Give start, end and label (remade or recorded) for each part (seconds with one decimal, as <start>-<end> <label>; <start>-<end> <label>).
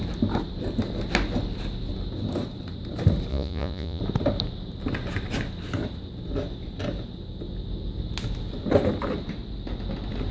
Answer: 0.0-3.3 recorded; 3.3-4.0 remade; 4.0-10.3 recorded